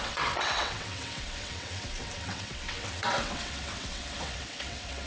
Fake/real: fake